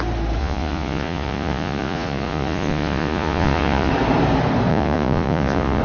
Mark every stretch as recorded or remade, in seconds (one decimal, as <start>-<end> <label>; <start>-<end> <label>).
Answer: 0.0-0.4 recorded; 0.4-3.9 remade; 3.9-4.7 recorded; 4.7-5.8 remade